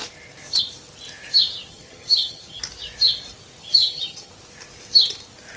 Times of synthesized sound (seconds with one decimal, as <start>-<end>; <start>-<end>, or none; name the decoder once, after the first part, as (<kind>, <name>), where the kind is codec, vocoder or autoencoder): 1.7-2.6 (vocoder, HiFi-GAN); 3.6-4.3